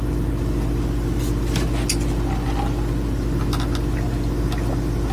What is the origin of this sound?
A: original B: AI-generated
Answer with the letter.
A